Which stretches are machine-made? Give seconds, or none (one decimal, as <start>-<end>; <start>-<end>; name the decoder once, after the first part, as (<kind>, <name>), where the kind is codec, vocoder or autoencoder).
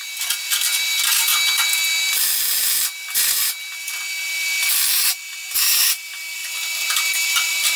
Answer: 0.0-1.3 (vocoder, BigVGAN v2); 5.6-7.8